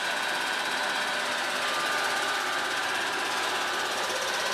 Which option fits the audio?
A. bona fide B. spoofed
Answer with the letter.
A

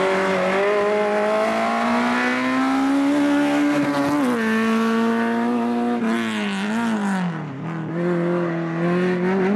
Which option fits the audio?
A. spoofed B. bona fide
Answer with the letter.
B